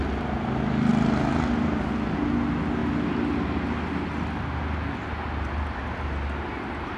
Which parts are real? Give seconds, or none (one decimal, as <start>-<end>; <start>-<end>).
0.0-7.0